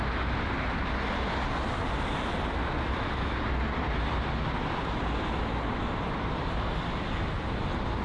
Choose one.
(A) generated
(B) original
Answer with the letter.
B